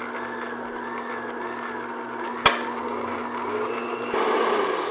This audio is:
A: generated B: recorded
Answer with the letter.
B